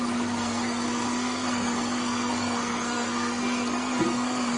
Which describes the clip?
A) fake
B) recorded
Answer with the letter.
A